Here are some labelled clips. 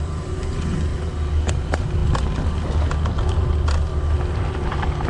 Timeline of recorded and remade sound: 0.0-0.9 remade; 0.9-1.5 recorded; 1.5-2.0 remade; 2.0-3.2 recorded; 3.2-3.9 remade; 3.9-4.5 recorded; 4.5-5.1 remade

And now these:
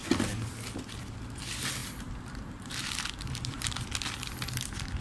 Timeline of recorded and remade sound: 0.0-1.8 recorded; 1.8-3.8 remade; 3.8-5.0 recorded

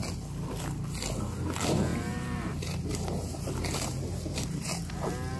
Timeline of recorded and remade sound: 0.0-1.9 recorded; 1.9-4.9 remade; 4.9-5.4 recorded